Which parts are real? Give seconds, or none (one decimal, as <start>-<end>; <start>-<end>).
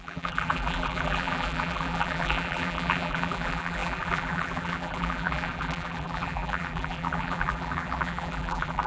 none